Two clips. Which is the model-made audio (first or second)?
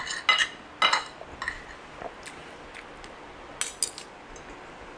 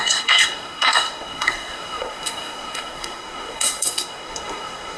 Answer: second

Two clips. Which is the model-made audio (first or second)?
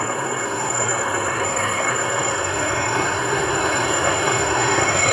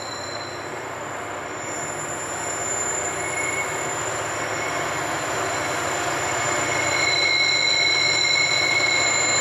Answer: first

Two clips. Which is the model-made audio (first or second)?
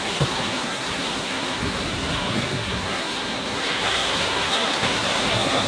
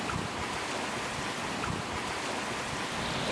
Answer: first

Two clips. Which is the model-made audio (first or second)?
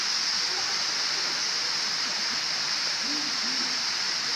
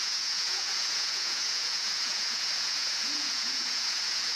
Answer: second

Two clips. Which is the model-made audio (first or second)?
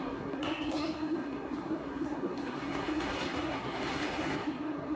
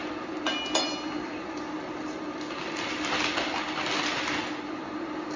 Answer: first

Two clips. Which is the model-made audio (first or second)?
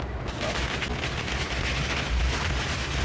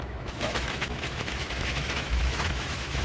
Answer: second